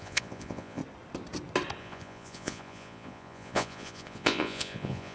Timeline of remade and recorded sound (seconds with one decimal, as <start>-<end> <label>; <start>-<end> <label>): 0.0-0.8 remade; 0.8-1.8 recorded; 1.8-5.1 remade